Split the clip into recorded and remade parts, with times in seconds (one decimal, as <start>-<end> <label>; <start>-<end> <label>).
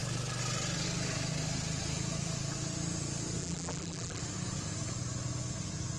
0.0-3.4 recorded; 3.4-4.2 remade; 4.2-6.0 recorded